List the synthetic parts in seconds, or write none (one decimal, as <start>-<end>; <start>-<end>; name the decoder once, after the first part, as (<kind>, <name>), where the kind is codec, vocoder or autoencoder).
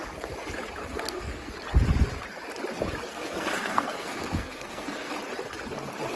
0.8-1.5 (codec, SNAC); 3.1-5.1